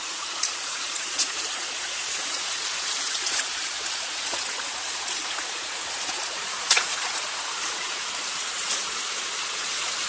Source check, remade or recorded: remade